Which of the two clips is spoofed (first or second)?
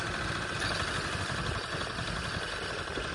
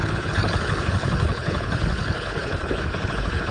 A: second